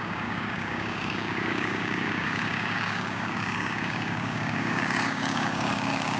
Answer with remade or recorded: remade